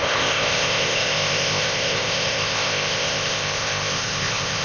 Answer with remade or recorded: remade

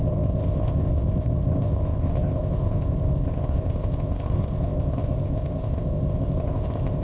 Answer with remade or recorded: remade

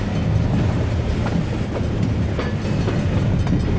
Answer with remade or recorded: recorded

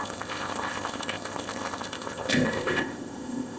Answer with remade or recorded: remade